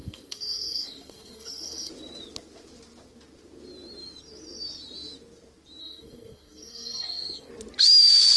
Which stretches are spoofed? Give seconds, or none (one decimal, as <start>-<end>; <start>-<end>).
0.0-1.9; 5.8-7.5